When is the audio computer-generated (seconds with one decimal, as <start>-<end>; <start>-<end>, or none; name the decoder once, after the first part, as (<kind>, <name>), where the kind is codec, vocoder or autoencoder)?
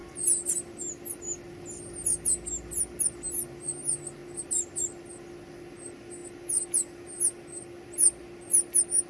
none